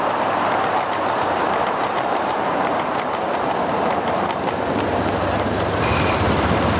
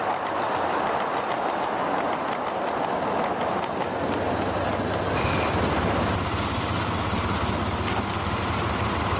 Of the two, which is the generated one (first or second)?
first